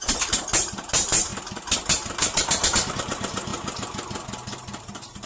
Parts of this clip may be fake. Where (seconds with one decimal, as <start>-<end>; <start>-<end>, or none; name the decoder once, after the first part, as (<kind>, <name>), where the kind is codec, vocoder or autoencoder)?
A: 0.0-1.3 (vocoder, BigVGAN v2); 2.9-3.5; 4.8-5.3